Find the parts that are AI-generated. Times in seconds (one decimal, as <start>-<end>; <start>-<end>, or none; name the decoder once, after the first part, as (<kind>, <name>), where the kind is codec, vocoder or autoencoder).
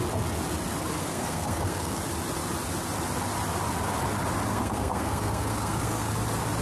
1.0-2.0 (codec, SNAC); 4.5-6.1